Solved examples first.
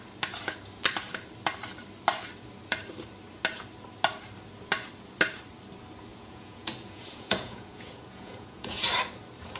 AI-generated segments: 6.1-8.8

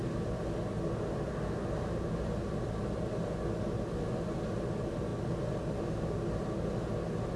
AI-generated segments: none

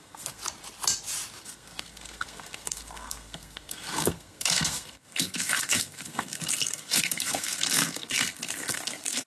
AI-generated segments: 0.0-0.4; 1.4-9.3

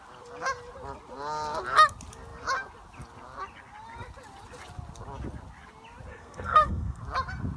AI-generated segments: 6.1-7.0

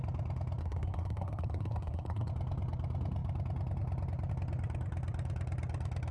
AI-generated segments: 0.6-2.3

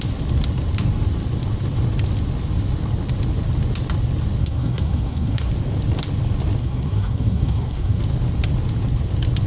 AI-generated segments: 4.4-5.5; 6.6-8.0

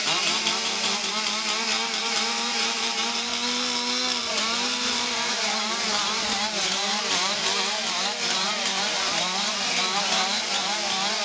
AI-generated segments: 0.0-1.1; 2.0-3.3; 4.2-11.2

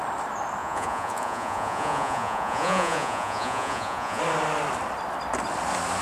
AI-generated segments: 0.6-4.2